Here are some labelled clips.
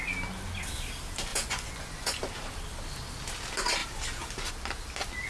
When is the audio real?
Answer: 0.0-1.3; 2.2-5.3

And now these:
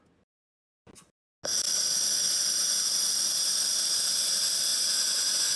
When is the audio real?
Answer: 0.0-4.7

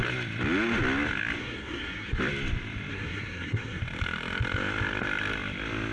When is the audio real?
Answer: 0.0-1.4; 2.2-2.9; 3.8-5.9